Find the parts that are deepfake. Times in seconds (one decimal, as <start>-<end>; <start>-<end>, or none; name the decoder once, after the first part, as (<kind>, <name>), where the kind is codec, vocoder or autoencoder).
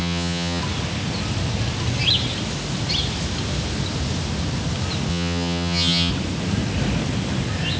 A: 0.0-0.6 (vocoder, HiFi-GAN); 5.1-6.1